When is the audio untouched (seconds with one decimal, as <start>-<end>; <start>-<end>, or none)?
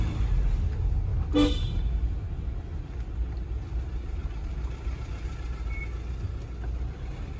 0.0-1.1; 1.8-4.2; 5.8-7.4